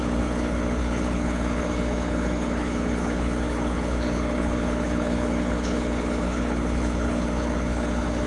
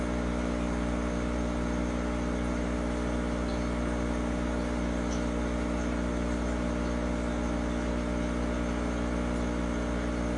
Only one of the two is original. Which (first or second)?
second